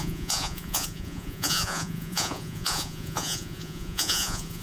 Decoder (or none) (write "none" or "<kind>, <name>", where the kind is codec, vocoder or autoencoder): vocoder, Vocos